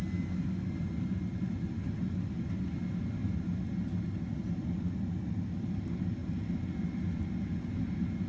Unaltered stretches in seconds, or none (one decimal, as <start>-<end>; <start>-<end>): 0.0-6.2; 6.8-8.3